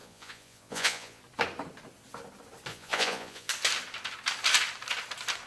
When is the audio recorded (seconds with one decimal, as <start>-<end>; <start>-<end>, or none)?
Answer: 1.2-2.7; 3.5-5.5